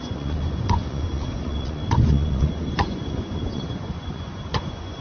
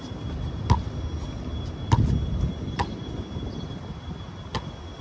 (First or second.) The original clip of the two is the second